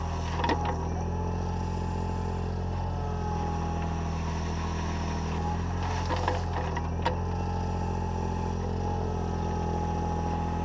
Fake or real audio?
real